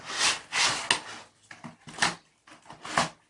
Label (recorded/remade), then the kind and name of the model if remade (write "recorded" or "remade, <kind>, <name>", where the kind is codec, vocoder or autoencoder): recorded